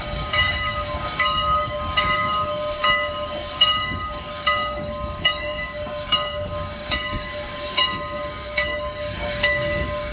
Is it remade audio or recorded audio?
remade